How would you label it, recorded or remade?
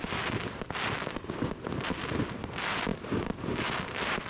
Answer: recorded